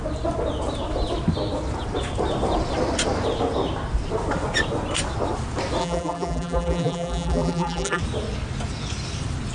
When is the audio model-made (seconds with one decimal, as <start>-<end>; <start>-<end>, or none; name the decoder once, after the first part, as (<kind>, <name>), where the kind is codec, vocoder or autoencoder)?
5.8-8.0 (vocoder, BigVGAN v2)

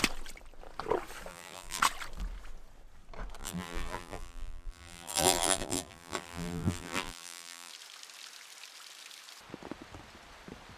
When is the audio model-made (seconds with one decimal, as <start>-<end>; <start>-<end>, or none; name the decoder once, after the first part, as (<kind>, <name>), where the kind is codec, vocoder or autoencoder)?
1.3-1.8 (vocoder, BigVGAN v2); 3.4-7.7

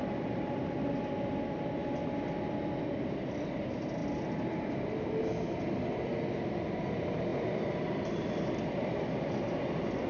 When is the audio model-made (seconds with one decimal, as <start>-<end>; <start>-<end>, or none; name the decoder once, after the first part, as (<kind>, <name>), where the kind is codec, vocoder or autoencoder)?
0.0-0.6 (vocoder, BigVGAN v2); 7.3-8.3

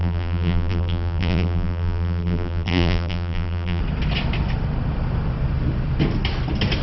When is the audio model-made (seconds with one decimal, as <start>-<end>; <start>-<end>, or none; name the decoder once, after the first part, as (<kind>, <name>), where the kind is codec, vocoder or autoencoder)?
0.0-3.8 (vocoder, BigVGAN v2)

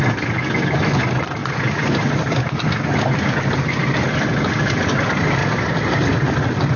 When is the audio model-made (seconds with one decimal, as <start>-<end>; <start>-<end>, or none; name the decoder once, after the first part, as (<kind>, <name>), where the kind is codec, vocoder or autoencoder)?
5.4-6.3 (vocoder, BigVGAN v2)